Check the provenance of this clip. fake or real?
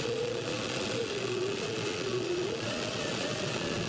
fake